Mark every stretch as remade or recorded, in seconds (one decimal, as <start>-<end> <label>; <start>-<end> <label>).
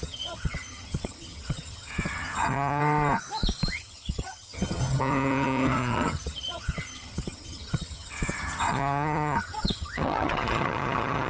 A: 0.0-2.8 remade; 2.8-3.7 recorded; 3.7-11.3 remade